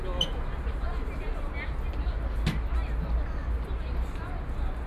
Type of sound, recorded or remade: recorded